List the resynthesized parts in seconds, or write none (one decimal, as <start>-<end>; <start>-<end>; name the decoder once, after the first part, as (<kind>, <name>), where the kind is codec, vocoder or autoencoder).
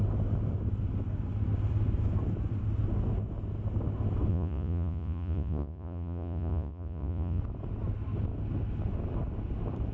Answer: 4.3-7.4 (vocoder, Vocos)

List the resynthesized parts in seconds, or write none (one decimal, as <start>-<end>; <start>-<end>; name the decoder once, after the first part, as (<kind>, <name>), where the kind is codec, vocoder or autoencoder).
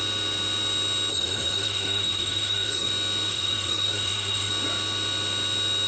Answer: 1.1-2.9 (codec, SNAC); 3.3-4.5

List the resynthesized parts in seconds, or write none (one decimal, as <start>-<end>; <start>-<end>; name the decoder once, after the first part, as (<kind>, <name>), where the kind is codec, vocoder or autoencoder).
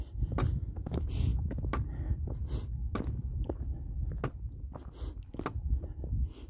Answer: none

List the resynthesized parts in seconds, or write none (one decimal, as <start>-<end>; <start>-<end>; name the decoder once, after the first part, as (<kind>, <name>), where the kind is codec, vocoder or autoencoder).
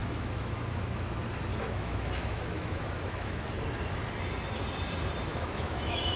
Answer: 0.0-0.8 (autoencoder, DAC-VAE); 1.5-3.5; 5.3-6.2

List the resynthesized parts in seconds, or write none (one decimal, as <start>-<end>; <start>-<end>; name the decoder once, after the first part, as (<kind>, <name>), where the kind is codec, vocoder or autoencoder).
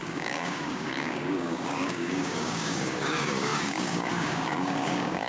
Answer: 0.0-5.3 (codec, DAC)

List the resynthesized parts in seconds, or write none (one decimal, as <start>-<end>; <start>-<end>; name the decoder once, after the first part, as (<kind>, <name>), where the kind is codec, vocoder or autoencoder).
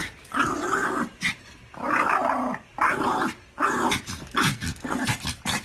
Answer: 4.5-5.1 (codec, SNAC)